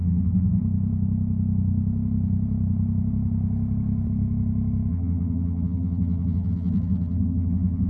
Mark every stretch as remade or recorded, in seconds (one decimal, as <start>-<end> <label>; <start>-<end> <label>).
0.0-0.6 remade; 0.6-4.9 recorded; 4.9-7.9 remade